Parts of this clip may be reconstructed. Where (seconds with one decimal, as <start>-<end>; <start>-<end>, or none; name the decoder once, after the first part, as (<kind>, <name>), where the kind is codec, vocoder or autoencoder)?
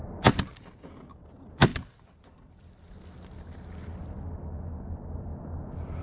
1.7-2.9 (vocoder, BigVGAN v2)